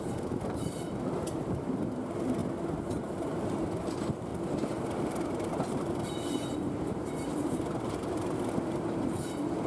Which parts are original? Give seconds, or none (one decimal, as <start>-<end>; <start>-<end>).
2.4-3.0; 4.3-5.0